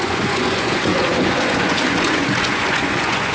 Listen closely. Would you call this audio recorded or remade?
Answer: remade